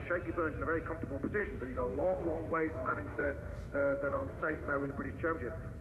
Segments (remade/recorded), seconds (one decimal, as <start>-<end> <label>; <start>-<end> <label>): 0.0-1.4 recorded; 1.4-4.9 remade; 4.9-5.8 recorded